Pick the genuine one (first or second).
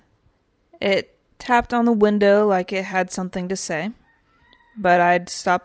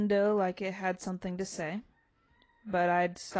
second